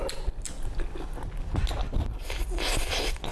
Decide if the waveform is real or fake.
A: real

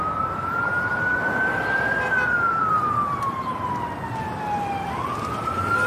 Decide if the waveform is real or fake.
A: real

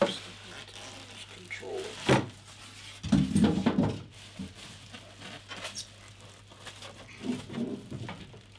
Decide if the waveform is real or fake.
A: real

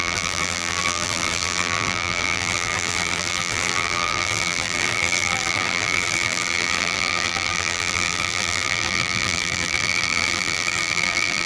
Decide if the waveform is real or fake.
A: fake